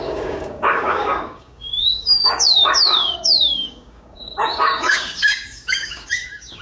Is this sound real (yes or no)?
no